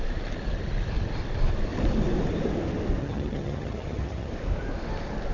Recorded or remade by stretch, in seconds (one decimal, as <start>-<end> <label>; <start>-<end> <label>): 0.0-3.0 recorded; 3.0-4.3 remade; 4.3-5.3 recorded